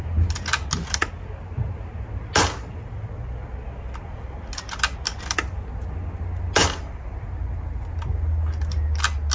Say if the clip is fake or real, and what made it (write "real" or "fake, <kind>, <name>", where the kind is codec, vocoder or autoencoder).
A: real